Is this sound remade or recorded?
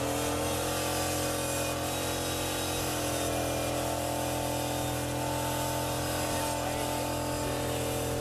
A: recorded